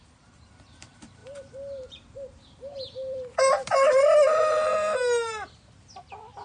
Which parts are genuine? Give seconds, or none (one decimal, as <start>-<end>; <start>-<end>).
4.7-6.4

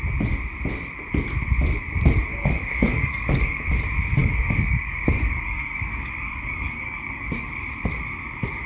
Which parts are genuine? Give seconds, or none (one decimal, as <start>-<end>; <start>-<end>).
0.0-2.3; 3.7-4.2; 7.5-8.7

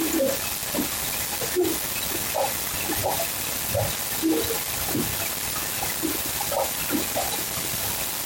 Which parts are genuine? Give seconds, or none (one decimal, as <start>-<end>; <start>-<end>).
0.0-8.3

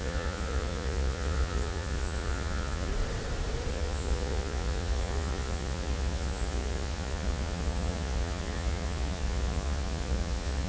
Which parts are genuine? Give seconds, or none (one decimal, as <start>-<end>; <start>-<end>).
2.9-3.7